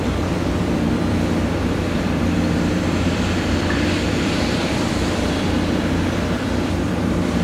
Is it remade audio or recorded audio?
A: remade